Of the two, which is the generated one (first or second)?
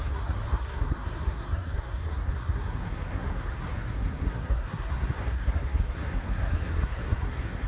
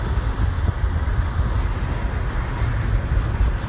first